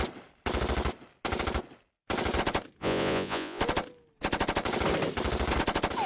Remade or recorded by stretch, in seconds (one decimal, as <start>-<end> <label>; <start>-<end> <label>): 0.0-2.8 recorded; 2.8-3.6 remade; 3.6-6.1 recorded